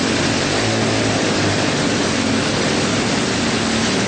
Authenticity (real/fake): real